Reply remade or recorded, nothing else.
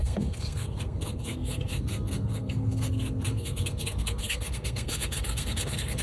remade